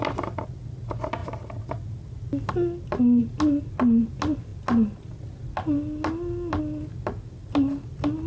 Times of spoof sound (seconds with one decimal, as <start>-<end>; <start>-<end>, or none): none